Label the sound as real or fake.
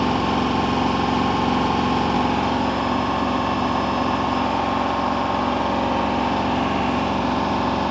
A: real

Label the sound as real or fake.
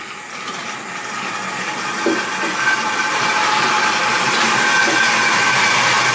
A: real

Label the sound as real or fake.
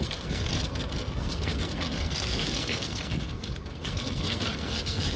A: fake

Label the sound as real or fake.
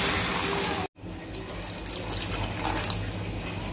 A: real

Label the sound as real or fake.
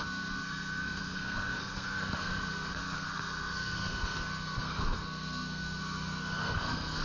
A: fake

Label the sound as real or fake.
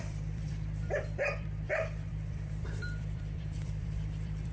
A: fake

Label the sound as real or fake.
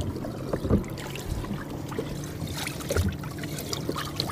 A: real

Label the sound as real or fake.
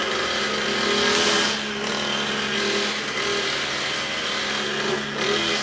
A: real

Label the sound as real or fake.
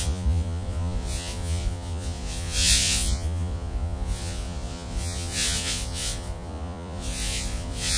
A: fake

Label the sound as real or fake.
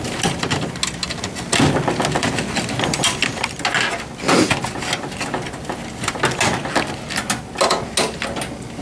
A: real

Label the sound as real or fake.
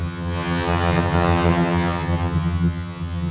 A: fake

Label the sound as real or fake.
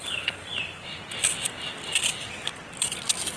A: real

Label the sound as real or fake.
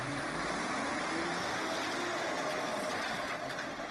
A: real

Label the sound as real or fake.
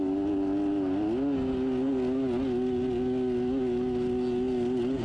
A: real